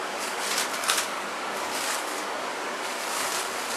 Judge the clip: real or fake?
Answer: fake